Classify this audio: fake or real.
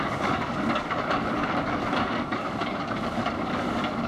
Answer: fake